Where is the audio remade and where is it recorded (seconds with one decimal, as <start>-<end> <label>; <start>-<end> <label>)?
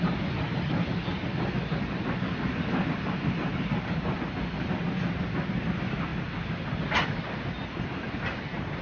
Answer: 0.0-8.8 recorded